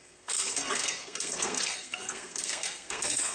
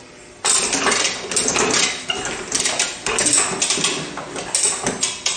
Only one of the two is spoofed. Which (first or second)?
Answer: first